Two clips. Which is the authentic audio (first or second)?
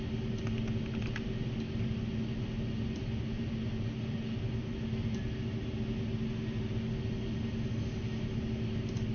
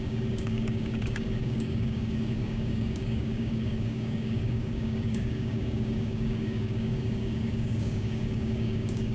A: first